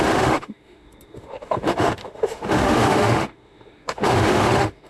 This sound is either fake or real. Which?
fake